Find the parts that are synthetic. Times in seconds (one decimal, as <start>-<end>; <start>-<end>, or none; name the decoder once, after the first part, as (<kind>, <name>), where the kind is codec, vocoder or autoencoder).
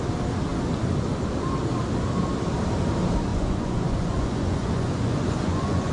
3.3-5.9 (vocoder, Vocos)